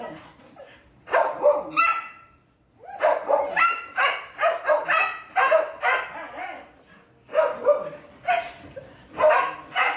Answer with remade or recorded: recorded